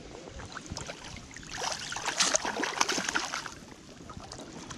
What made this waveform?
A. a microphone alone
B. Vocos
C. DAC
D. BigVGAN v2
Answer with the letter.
A